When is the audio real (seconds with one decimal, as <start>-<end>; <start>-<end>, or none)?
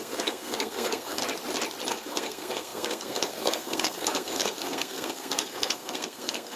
1.2-1.9